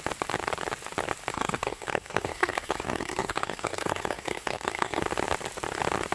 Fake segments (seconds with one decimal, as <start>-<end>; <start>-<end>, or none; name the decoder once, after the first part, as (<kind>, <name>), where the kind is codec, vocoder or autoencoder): 1.3-5.0 (codec, SNAC)